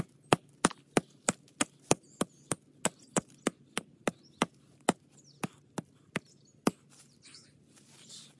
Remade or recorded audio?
recorded